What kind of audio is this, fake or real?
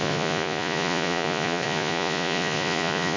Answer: fake